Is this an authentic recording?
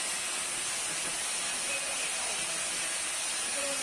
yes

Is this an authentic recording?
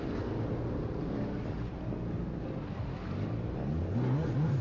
yes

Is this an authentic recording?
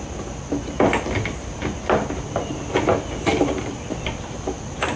yes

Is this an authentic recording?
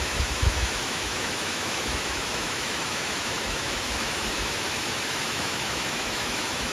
no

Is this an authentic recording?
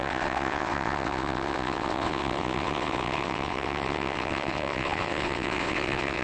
no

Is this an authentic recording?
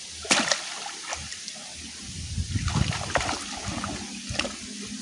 yes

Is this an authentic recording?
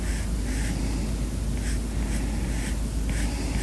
yes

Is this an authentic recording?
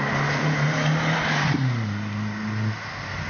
yes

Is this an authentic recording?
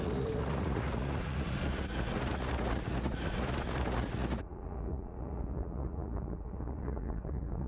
no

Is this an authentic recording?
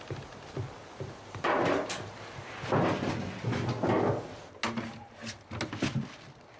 yes